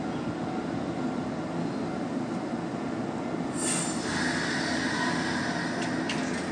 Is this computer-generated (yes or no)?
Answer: no